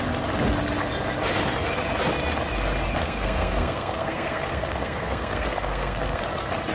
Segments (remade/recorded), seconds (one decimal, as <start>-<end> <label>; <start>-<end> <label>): 0.0-3.0 recorded; 3.0-6.2 remade; 6.2-6.7 recorded